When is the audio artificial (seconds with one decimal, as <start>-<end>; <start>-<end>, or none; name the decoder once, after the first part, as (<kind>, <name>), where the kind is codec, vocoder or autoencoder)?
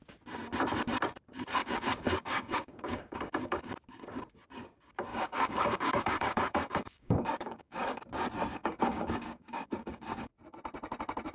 1.6-3.7 (codec, DAC); 5.1-8.0; 8.5-10.3